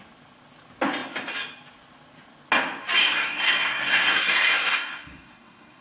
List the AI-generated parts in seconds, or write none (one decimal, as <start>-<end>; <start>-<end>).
3.0-5.8